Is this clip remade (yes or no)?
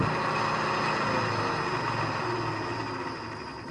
no